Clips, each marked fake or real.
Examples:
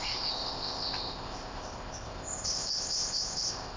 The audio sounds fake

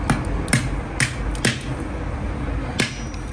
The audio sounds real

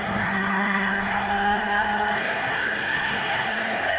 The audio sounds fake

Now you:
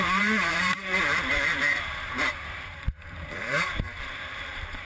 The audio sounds fake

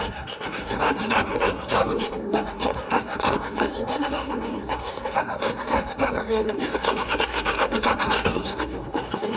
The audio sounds fake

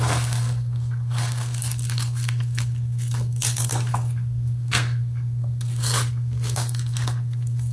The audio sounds fake